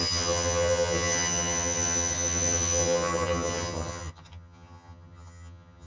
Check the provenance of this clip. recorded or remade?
remade